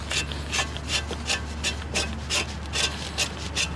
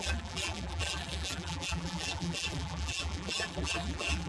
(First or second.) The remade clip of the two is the second